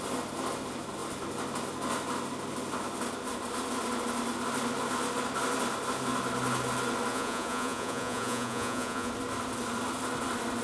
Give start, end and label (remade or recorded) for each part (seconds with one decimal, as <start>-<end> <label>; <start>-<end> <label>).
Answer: 0.0-7.1 recorded; 7.1-9.1 remade; 9.1-10.6 recorded